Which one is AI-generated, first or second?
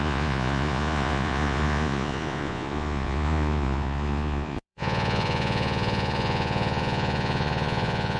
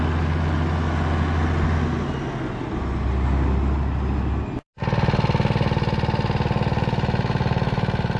first